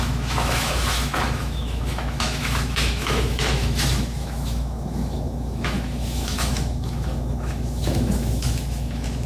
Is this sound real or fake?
fake